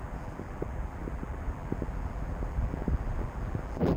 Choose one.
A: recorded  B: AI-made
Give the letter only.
B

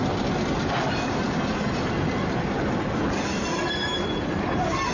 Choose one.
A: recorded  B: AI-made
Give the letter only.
A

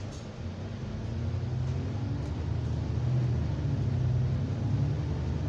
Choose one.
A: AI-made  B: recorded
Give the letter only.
B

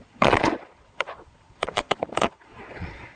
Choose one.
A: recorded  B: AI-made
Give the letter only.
B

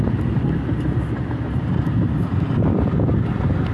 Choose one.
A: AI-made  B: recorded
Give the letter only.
B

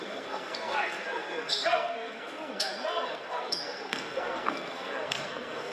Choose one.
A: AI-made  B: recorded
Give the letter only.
A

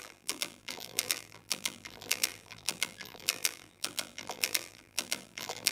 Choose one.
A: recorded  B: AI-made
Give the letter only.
B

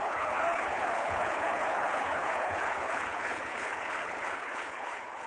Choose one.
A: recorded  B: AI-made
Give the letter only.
B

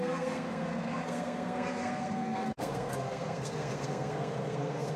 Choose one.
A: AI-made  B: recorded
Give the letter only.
A